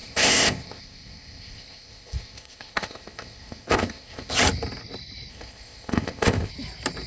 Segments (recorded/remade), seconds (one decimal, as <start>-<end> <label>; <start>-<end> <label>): 0.0-4.3 remade; 4.3-5.3 recorded; 5.3-6.5 remade; 6.5-7.1 recorded